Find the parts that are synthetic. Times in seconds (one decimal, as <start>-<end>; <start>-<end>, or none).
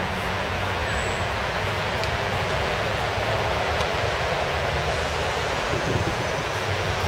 0.0-7.1